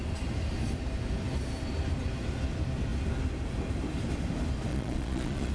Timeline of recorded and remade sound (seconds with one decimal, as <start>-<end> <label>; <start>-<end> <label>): 0.0-4.7 recorded; 4.7-5.5 remade